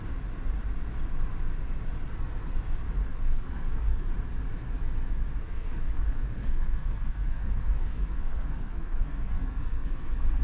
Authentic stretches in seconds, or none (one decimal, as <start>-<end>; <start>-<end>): 0.0-3.1; 4.1-5.4

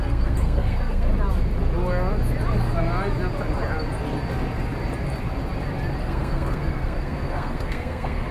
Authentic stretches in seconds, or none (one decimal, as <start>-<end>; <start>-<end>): 1.1-6.0

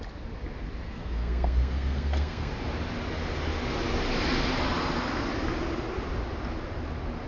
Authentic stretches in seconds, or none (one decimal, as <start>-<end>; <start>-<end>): 0.0-0.8; 2.5-7.3

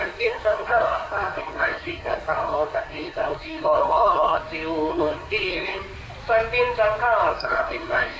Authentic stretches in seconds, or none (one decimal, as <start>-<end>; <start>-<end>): 4.4-4.9; 5.8-7.3

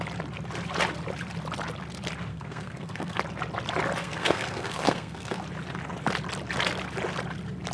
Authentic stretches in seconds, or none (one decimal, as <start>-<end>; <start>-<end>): 0.0-2.3; 3.2-4.0; 5.4-7.7

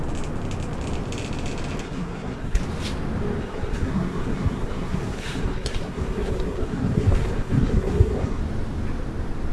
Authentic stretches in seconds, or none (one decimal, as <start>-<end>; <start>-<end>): 0.0-1.8; 2.6-3.4; 8.4-9.5

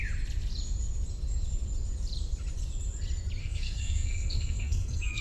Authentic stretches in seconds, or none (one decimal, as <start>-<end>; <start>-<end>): 0.0-3.4

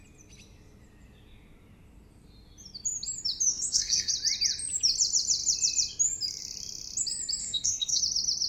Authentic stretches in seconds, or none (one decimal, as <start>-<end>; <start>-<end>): 0.0-3.5; 4.1-7.4; 8.0-8.5